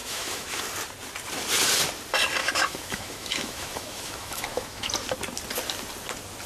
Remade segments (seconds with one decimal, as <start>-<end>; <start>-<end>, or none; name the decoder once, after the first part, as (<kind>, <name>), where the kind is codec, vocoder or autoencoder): 0.0-0.6 (autoencoder, DAC-VAE); 2.4-4.9